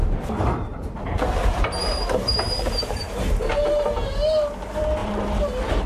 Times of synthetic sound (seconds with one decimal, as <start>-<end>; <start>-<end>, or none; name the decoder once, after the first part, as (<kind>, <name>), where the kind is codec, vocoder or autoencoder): 0.7-4.1 (vocoder, BigVGAN v2); 5.0-5.9